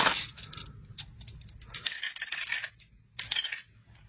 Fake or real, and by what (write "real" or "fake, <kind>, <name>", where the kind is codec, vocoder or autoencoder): real